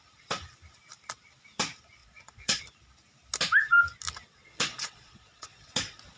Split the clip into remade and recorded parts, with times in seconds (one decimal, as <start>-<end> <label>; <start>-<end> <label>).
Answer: 0.0-2.0 recorded; 2.0-2.6 remade; 2.6-4.3 recorded; 4.3-6.2 remade